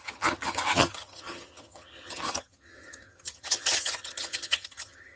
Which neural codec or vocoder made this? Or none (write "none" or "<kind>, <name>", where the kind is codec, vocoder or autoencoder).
vocoder, HiFi-GAN